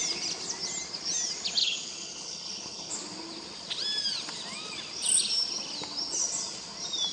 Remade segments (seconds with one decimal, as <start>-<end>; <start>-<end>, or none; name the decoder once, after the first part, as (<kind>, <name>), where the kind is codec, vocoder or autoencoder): 1.6-2.9 (codec, HILCodec)